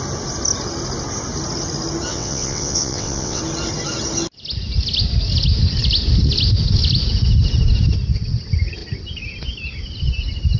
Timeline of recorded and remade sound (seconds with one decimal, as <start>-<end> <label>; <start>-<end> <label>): 0.0-2.1 recorded; 2.1-3.4 remade; 3.4-10.6 recorded